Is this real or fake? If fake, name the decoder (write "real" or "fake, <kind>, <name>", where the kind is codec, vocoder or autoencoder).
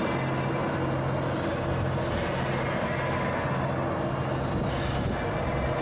real